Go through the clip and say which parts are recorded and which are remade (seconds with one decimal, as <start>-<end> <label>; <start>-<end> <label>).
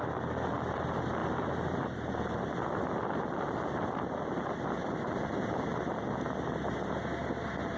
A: 0.0-7.8 recorded